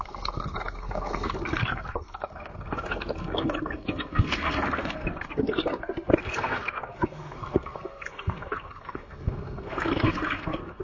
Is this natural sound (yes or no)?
no